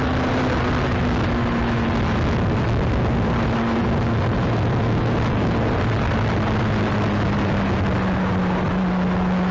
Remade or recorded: recorded